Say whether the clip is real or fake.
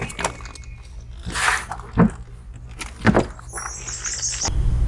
real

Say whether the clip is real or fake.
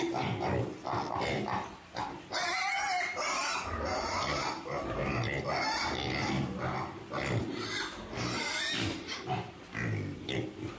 real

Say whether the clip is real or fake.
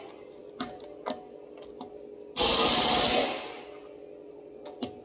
real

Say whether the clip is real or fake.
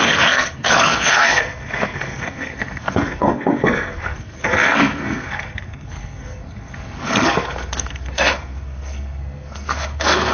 fake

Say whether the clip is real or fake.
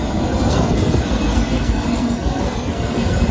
fake